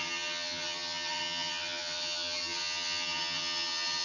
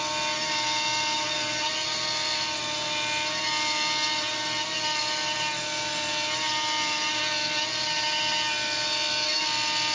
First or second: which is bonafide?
second